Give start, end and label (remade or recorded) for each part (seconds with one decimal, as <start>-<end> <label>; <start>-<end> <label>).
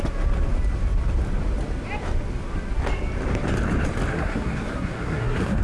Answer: 0.0-4.1 recorded; 4.1-5.6 remade